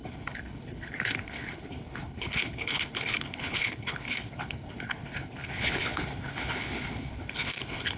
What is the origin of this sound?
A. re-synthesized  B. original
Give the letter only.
A